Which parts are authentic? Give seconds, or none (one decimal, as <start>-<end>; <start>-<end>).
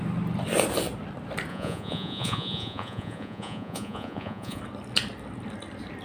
0.0-1.5; 4.6-6.0